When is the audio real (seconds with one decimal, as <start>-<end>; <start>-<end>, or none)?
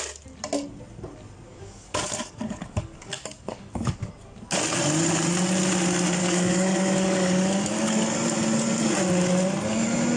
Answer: 0.0-1.5; 4.1-6.2; 7.9-10.2